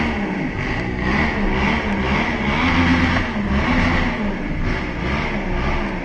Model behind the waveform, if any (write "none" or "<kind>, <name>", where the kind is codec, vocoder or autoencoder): none